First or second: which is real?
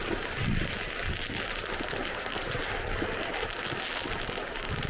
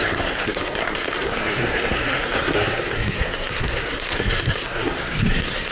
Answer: first